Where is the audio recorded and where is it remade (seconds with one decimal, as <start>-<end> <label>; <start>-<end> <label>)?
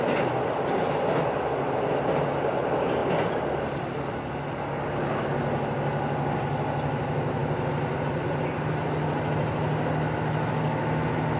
0.0-11.4 recorded